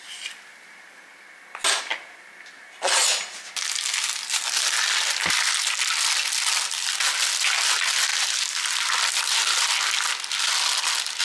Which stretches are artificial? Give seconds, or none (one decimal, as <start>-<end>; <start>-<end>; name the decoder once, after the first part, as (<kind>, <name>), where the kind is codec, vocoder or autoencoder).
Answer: none